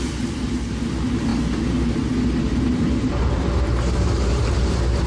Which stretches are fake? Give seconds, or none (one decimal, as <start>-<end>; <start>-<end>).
none